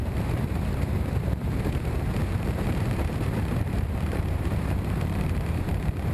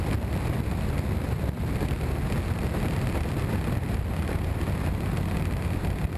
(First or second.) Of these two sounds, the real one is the second